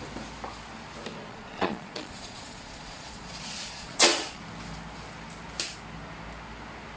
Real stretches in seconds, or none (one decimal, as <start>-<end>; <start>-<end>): 0.0-1.3; 4.4-7.0